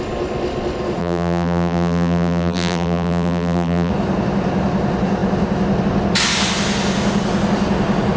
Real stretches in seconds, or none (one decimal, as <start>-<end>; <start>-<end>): 0.0-1.0; 3.9-8.2